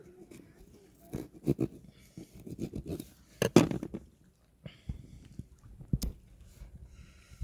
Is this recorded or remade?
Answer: recorded